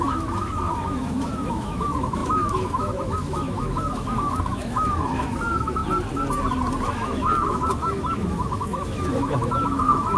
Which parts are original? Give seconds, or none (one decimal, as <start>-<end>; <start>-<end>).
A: 5.8-6.8